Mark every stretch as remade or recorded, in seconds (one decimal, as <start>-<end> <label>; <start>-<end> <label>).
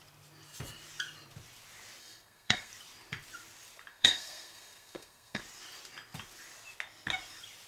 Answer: 0.0-2.0 recorded; 2.0-2.7 remade; 2.7-3.9 recorded; 3.9-5.4 remade; 5.4-7.7 recorded